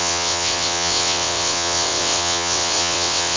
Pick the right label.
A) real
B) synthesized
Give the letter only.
B